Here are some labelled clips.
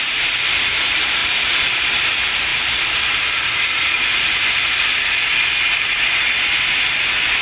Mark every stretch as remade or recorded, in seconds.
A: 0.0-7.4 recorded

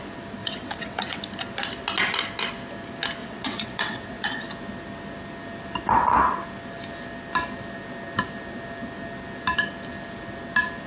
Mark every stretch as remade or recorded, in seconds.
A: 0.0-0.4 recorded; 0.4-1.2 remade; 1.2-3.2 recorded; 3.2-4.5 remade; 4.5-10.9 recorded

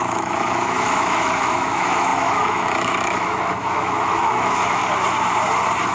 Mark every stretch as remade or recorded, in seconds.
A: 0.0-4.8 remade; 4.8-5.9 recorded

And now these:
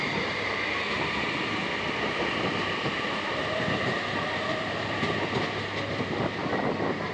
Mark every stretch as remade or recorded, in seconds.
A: 0.0-1.6 recorded; 1.6-5.6 remade; 5.6-7.1 recorded

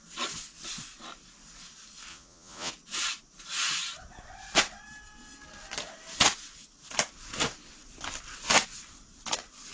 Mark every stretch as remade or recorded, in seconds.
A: 0.0-2.1 recorded; 2.1-2.7 remade; 2.7-9.7 recorded

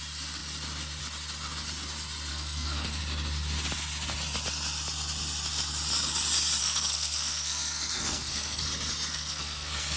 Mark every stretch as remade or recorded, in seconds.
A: 0.0-2.3 recorded; 2.3-3.0 remade; 3.0-6.6 recorded; 6.6-8.6 remade; 8.6-9.1 recorded; 9.1-10.0 remade

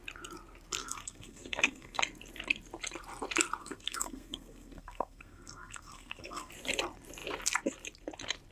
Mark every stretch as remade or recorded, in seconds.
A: 0.0-0.8 recorded; 0.8-2.0 remade; 2.0-3.6 recorded; 3.6-6.5 remade; 6.5-8.5 recorded

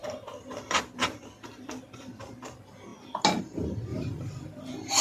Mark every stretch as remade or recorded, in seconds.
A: 0.0-3.9 recorded; 3.9-5.0 remade